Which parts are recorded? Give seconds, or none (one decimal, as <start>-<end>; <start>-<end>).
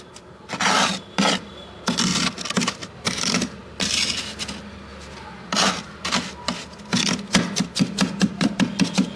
2.1-2.7; 3.6-7.6